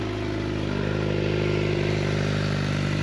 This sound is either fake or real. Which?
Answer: real